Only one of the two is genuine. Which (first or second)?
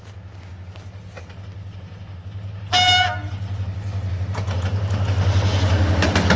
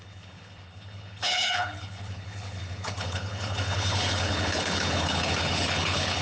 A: first